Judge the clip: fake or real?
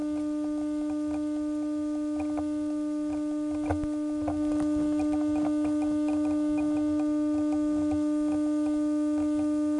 real